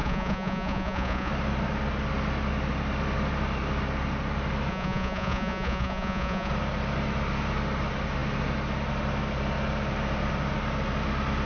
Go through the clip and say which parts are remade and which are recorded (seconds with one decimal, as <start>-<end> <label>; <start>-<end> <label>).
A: 0.0-1.3 remade; 1.3-4.7 recorded; 4.7-6.5 remade; 6.5-11.5 recorded